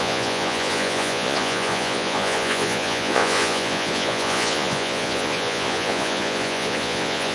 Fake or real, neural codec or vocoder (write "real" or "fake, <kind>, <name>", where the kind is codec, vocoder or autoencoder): fake, vocoder, Vocos